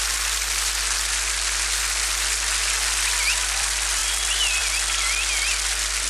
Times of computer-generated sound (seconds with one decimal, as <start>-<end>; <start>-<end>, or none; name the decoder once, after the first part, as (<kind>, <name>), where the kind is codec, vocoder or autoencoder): none